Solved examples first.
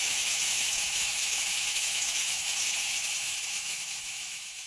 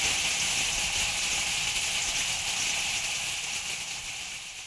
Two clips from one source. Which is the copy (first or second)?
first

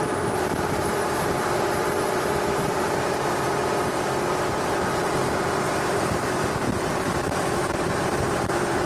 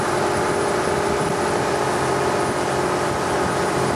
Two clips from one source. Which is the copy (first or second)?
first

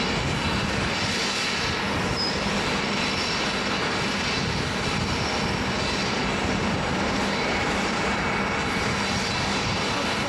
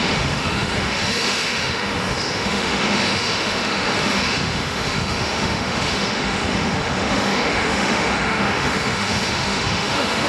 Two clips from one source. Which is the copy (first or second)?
second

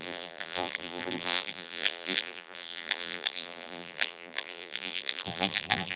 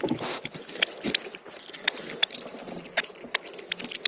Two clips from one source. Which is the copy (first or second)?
first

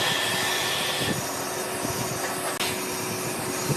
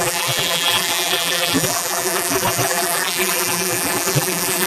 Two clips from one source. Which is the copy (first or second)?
second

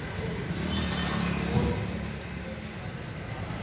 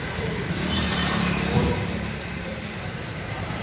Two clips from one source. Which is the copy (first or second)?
second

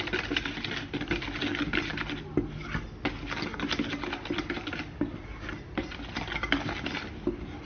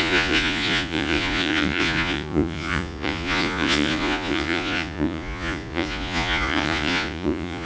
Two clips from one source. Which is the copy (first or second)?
second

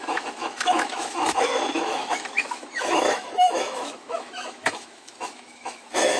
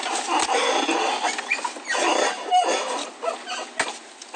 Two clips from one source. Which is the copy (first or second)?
first